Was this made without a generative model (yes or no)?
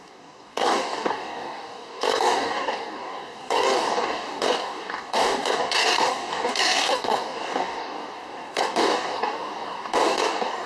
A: no